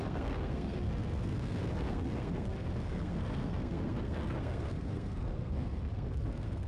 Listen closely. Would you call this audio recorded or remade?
remade